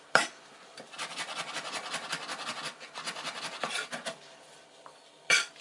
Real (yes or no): no